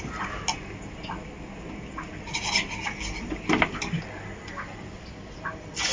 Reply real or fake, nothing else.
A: real